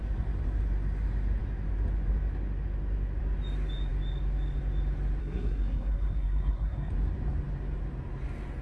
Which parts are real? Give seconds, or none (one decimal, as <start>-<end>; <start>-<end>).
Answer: 0.0-5.2; 6.9-8.6